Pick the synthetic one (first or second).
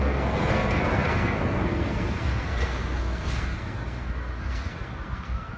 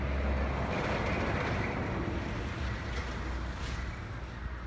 first